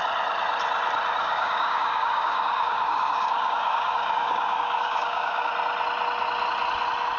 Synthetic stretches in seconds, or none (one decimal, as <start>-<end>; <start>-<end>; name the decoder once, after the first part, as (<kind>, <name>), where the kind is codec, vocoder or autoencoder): 1.2-5.5 (codec, DAC)